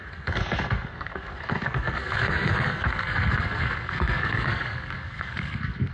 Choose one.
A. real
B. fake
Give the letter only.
B